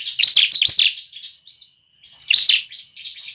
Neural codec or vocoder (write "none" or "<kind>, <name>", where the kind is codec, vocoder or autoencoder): none